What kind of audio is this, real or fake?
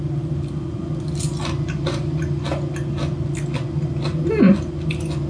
real